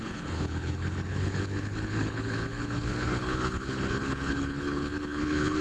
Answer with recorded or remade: remade